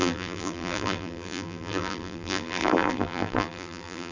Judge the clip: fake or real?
fake